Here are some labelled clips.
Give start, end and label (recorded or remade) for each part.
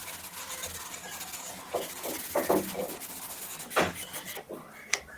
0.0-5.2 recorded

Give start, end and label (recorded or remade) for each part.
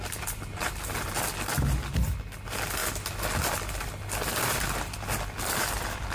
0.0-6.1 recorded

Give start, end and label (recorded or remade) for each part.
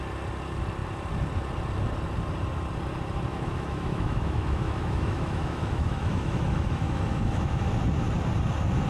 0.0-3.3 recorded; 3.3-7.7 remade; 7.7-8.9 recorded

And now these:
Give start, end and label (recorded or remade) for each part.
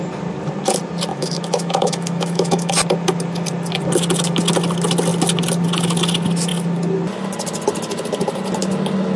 0.0-1.1 recorded; 1.1-2.7 remade; 2.7-9.2 recorded